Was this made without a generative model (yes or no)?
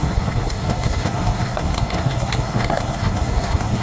no